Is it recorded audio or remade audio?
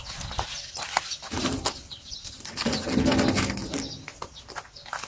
recorded